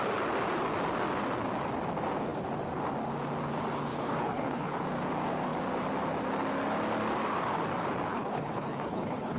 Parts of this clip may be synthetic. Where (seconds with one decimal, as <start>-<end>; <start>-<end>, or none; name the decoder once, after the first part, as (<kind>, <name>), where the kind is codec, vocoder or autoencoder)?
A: 3.9-4.8 (codec, HILCodec); 8.1-9.4

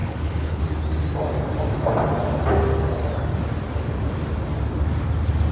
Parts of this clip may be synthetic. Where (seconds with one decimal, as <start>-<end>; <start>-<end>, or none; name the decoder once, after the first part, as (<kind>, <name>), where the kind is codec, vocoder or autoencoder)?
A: 0.0-0.6 (codec, HILCodec)

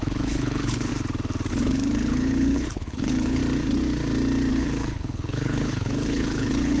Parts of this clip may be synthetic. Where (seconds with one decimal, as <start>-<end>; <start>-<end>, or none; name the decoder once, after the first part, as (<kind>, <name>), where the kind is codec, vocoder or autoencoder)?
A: 0.0-0.9 (codec, HILCodec); 1.5-3.4; 4.5-6.8

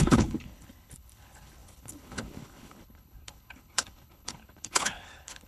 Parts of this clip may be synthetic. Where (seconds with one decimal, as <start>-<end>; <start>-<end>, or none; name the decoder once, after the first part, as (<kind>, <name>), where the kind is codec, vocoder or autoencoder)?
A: 0.0-5.5 (codec, HILCodec)

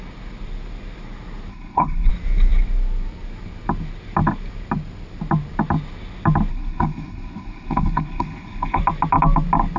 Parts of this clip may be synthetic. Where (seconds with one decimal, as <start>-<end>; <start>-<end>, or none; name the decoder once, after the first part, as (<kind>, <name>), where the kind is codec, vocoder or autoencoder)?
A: 1.5-2.1 (codec, HILCodec); 6.5-8.8

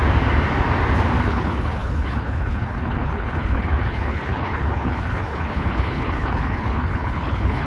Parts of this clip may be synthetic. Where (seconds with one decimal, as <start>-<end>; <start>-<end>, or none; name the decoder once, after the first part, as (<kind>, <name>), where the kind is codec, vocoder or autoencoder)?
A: 1.2-7.7 (codec, HILCodec)